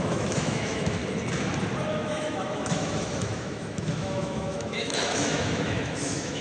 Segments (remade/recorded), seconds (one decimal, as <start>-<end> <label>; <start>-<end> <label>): 0.0-1.0 remade; 1.0-1.9 recorded; 1.9-6.4 remade